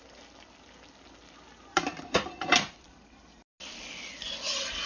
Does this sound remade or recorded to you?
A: recorded